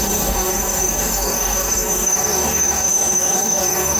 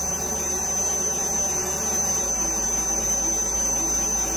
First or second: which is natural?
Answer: second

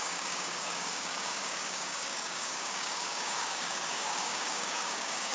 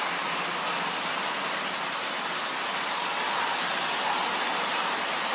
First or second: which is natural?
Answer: second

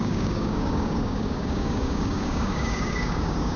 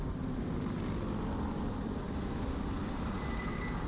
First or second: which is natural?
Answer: second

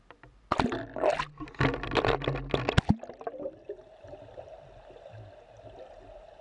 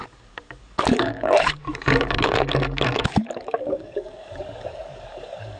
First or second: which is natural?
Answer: first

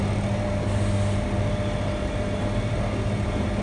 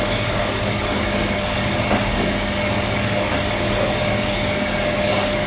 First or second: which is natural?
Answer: first